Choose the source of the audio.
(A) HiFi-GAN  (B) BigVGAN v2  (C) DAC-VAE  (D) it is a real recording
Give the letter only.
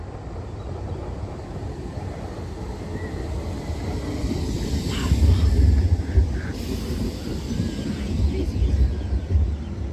D